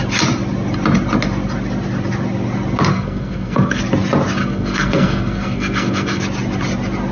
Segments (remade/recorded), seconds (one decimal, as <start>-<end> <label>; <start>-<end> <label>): 0.0-2.9 recorded; 2.9-3.8 remade; 3.8-4.4 recorded; 4.4-6.2 remade; 6.2-7.1 recorded